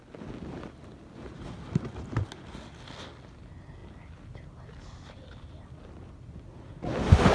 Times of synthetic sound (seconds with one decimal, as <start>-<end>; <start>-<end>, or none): none